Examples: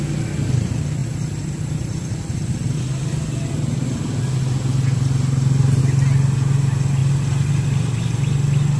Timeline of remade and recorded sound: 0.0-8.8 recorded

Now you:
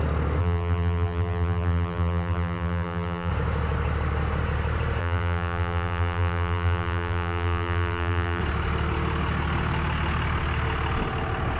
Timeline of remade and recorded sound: 0.0-0.4 recorded; 0.4-3.3 remade; 3.3-5.0 recorded; 5.0-8.4 remade; 8.4-11.6 recorded